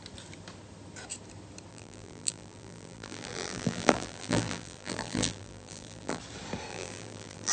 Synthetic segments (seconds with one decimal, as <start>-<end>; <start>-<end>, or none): 1.7-6.2; 6.7-7.5